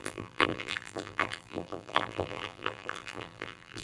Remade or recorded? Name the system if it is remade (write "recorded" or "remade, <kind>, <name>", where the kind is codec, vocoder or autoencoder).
remade, vocoder, BigVGAN v2